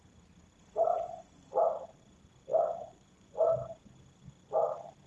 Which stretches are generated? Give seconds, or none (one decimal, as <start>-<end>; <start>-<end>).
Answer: 0.9-1.7; 2.5-3.5